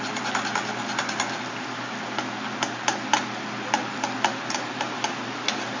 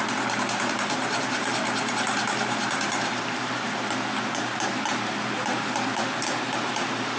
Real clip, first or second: first